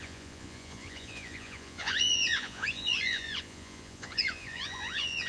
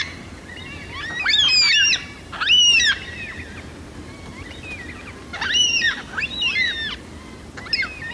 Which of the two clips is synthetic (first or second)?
first